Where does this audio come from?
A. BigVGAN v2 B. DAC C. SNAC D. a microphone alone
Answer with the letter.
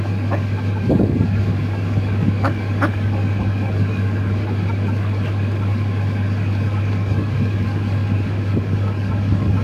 B